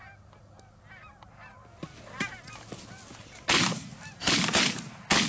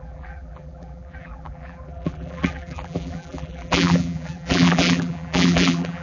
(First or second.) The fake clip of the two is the second